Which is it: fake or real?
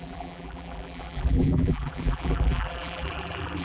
fake